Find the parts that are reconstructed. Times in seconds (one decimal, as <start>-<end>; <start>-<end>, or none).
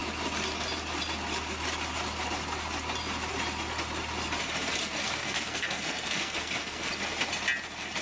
4.8-6.9